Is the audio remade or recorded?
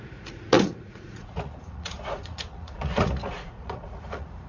remade